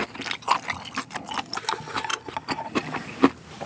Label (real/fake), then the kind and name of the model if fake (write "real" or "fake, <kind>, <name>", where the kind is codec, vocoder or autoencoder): real